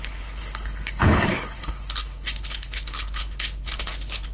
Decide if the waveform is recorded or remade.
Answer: remade